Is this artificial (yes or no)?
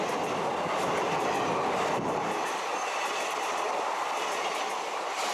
no